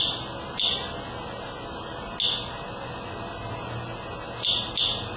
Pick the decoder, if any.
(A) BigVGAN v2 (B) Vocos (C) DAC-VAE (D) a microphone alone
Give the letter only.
D